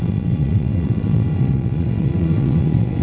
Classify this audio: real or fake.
fake